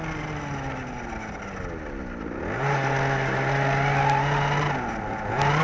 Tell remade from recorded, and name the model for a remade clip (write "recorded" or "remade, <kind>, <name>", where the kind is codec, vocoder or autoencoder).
recorded